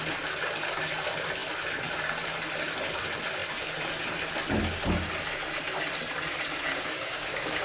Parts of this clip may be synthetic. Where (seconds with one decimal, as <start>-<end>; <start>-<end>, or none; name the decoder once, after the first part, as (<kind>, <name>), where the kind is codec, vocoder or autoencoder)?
6.7-7.6 (codec, DAC)